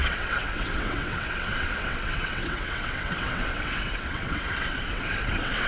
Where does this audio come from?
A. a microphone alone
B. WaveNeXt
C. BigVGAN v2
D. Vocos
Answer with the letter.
B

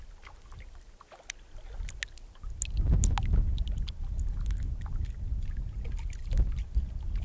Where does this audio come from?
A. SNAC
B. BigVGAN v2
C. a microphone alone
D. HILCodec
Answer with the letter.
C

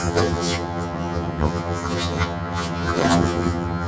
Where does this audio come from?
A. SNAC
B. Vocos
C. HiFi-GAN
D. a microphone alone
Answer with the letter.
C